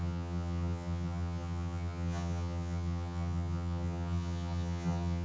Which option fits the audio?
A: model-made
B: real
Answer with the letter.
A